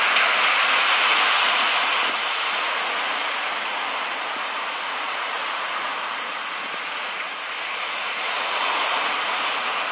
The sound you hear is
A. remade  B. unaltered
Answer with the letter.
A